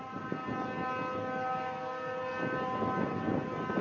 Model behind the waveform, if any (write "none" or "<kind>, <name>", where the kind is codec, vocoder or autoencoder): none